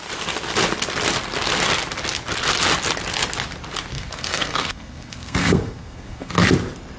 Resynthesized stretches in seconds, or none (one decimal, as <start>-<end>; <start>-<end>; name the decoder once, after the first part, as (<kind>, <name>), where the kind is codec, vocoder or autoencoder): 3.9-6.3 (codec, SNAC)